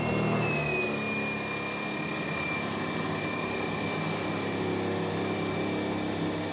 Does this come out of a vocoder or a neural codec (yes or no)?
no